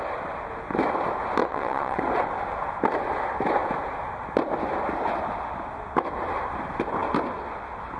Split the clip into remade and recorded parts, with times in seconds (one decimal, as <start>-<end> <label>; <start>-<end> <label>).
0.0-1.4 recorded; 1.4-2.0 remade; 2.0-8.0 recorded